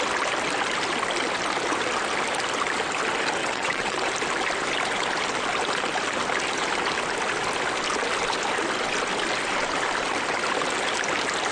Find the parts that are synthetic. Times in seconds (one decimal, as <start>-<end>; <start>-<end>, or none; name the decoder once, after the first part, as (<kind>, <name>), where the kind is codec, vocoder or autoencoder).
3.4-4.1 (vocoder, WaveNeXt)